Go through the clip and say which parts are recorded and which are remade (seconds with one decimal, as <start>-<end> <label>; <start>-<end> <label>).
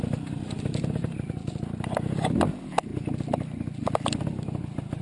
0.0-5.0 recorded